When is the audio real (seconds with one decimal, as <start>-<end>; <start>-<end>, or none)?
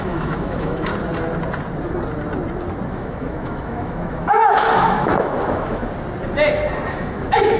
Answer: 0.9-2.9; 5.8-6.9